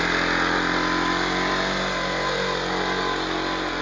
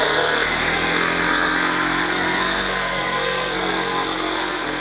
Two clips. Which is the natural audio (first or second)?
first